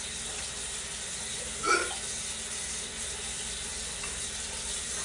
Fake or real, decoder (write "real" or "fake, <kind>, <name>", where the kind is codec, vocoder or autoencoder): real